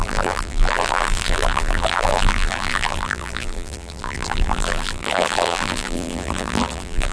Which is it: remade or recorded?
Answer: remade